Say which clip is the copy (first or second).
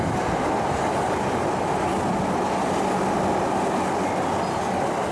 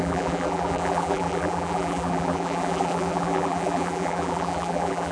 second